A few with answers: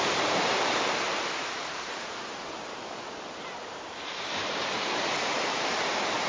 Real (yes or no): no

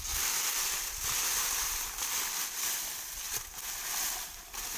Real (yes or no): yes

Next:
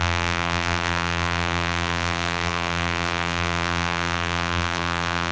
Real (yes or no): no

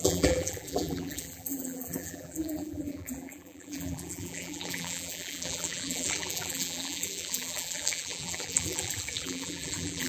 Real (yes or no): no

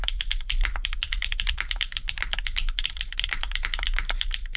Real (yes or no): no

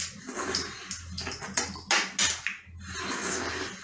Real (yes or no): yes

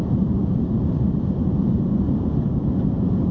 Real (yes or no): no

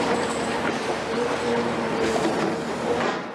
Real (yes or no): no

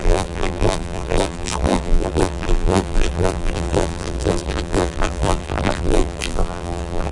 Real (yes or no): no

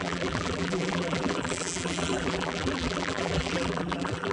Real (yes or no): no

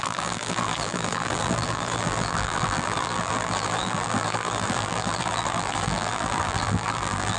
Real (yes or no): no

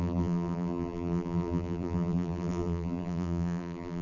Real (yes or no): no